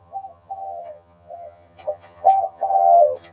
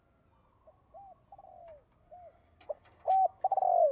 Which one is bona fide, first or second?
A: second